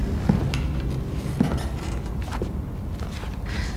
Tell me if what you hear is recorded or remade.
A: recorded